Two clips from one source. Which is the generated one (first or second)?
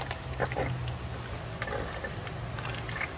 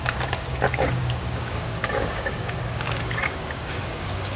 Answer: second